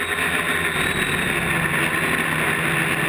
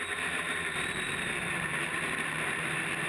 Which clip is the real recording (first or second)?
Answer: first